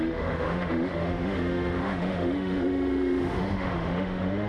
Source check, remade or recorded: remade